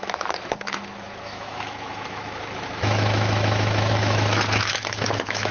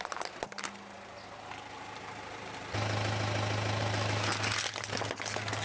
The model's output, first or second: first